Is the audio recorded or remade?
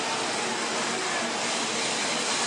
recorded